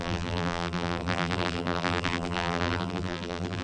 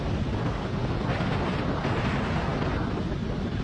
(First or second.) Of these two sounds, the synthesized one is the first